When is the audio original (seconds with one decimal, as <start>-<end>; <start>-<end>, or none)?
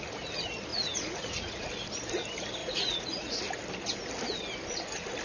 0.0-0.7; 1.6-2.6; 3.4-5.2